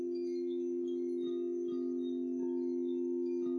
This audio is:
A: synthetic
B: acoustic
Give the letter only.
B